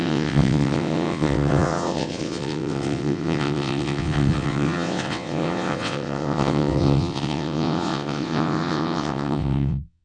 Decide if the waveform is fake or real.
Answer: fake